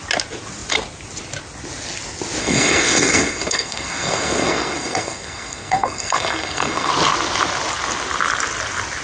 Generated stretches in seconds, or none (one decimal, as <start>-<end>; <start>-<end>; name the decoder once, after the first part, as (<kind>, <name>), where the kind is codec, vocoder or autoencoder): 2.4-6.9 (codec, SNAC)